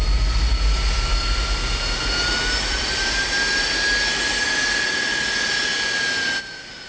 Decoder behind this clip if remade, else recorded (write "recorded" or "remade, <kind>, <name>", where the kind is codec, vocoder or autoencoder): recorded